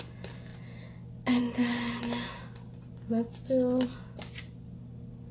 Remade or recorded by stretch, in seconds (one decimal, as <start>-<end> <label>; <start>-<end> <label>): 0.0-5.3 recorded